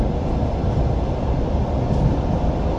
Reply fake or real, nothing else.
real